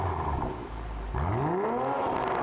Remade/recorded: recorded